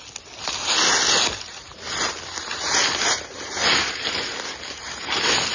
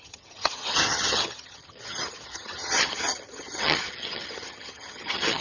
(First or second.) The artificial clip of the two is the second